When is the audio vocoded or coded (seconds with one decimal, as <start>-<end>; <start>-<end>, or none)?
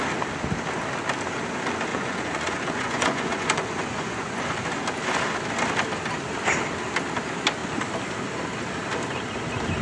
1.9-4.4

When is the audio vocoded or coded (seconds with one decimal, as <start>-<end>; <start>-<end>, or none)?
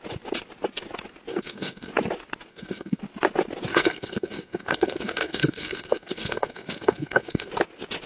1.3-1.9; 2.5-3.0; 3.7-7.5